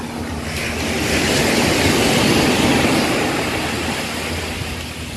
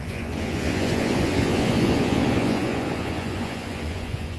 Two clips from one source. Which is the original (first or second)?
first